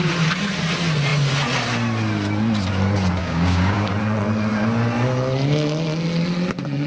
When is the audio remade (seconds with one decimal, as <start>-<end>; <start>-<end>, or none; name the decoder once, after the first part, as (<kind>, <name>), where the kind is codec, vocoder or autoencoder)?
3.2-3.9 (codec, DAC)